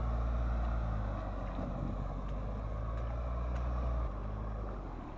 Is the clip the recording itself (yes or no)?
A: yes